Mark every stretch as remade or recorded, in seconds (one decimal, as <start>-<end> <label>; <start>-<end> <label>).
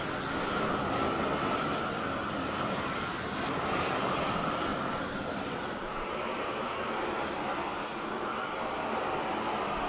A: 0.0-4.7 recorded; 4.7-6.9 remade; 6.9-7.7 recorded; 7.7-8.3 remade; 8.3-9.9 recorded